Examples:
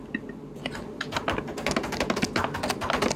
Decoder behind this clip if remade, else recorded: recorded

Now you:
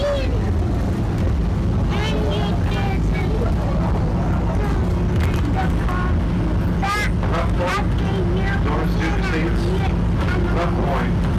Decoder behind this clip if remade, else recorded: recorded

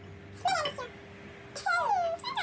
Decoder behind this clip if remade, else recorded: recorded